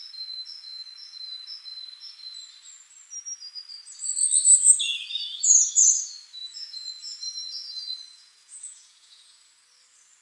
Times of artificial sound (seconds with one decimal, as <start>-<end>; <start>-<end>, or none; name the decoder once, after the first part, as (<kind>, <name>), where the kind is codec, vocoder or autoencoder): 6.5-9.5 (vocoder, Vocos)